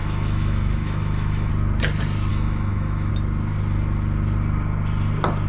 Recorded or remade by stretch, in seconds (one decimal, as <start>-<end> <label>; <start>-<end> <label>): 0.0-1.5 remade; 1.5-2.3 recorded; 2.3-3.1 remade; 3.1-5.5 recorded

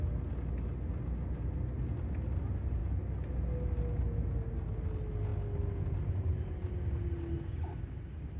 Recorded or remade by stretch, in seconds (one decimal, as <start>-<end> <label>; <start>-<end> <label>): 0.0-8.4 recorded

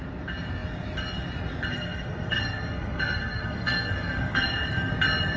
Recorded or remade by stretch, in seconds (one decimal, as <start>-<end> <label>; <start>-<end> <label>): 0.0-1.7 recorded; 1.7-4.9 remade; 4.9-5.4 recorded

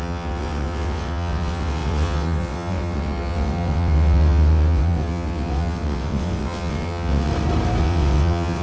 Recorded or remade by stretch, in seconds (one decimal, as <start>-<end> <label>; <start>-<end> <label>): 0.0-7.3 remade; 7.3-7.8 recorded; 7.8-8.6 remade